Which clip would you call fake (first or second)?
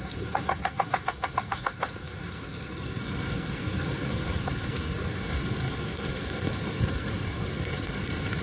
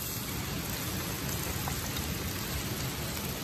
first